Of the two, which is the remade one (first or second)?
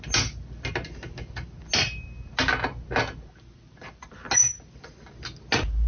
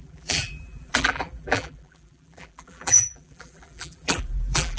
second